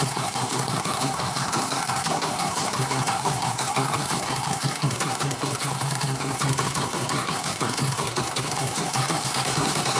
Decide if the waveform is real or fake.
fake